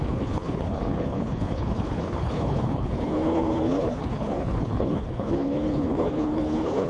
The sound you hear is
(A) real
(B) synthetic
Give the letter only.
B